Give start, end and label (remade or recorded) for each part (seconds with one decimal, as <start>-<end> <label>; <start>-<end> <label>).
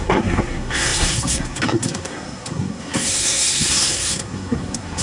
0.0-5.0 remade